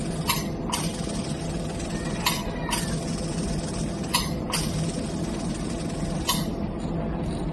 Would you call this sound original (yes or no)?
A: yes